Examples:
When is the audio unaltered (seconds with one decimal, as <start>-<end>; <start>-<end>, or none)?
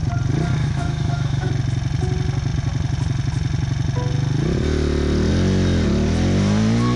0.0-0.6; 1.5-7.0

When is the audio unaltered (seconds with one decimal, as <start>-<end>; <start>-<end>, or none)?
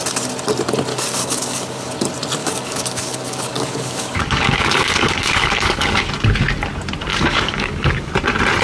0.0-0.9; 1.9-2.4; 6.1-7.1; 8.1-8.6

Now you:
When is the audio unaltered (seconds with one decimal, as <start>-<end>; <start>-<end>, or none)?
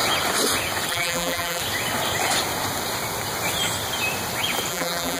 0.0-0.9; 1.6-4.7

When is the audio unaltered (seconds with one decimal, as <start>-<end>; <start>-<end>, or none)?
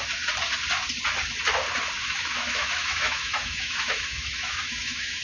0.0-2.0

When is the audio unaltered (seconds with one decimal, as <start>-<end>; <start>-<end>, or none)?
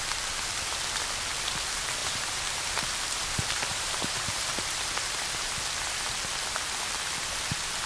0.0-2.0; 2.9-3.7; 4.5-7.9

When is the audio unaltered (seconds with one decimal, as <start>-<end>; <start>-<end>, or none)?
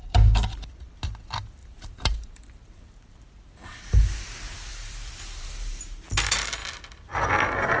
0.0-1.6; 2.7-4.7; 5.8-7.8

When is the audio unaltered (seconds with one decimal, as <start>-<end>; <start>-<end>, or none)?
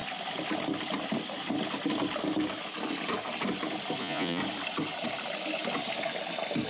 0.0-4.0; 4.4-6.7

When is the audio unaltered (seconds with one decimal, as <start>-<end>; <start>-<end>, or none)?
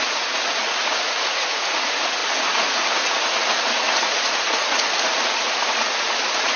none